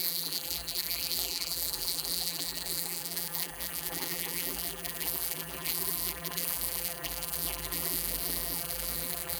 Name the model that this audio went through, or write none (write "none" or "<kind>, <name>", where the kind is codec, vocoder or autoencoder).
vocoder, BigVGAN v2